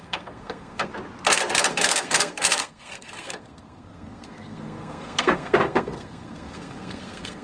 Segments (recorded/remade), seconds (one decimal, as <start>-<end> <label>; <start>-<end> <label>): 0.0-0.9 remade; 0.9-1.7 recorded; 1.7-7.4 remade